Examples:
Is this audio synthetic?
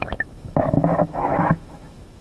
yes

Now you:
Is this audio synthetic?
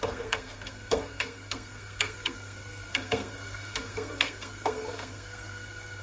yes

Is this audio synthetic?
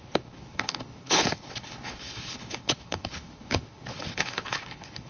yes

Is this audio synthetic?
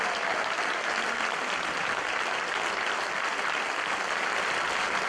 no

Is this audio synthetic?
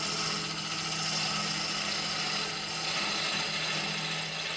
no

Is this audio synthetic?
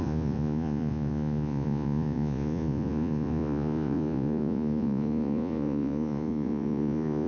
yes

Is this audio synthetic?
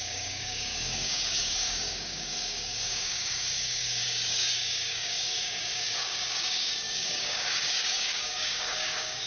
yes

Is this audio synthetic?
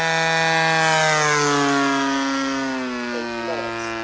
no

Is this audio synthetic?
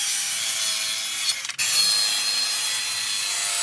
no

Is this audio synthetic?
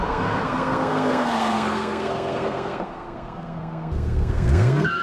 yes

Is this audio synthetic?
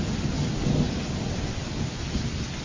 no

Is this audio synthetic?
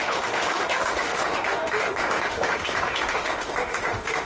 yes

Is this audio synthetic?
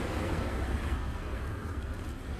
yes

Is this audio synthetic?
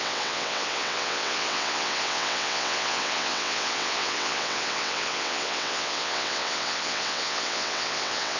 yes